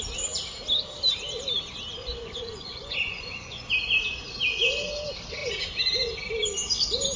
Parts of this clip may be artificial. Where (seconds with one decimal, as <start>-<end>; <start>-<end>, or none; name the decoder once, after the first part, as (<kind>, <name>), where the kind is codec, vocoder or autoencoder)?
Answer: 2.0-3.7 (vocoder, Vocos)